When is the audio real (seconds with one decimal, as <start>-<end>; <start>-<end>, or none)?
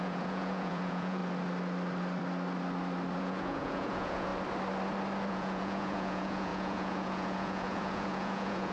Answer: 1.2-3.2; 4.3-5.3